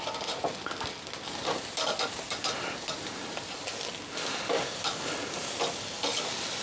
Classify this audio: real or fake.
real